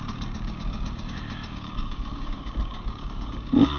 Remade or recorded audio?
remade